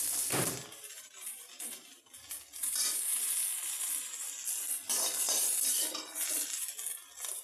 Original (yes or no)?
no